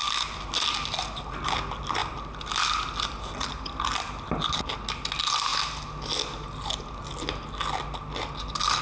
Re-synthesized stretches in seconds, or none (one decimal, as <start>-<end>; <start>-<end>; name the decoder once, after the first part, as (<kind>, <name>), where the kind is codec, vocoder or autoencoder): none